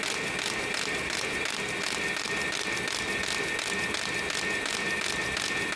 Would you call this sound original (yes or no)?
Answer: yes